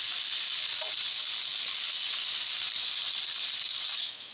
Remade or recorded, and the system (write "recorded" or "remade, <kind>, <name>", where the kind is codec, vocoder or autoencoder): recorded